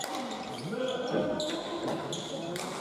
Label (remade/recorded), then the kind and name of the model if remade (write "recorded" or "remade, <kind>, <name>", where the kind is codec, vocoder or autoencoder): recorded